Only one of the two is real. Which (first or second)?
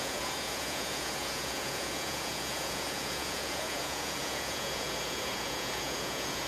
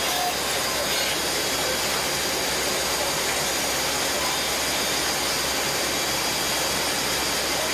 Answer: second